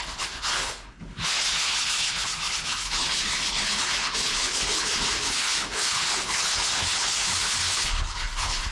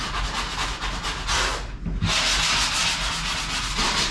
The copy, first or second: first